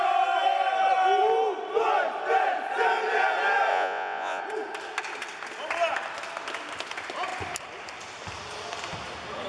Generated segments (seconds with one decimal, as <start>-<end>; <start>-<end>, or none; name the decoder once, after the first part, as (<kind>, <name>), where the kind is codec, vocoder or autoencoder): 3.7-4.4 (vocoder, Vocos)